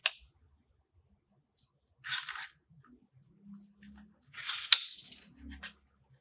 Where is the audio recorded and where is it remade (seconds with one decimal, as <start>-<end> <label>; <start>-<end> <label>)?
0.0-6.2 recorded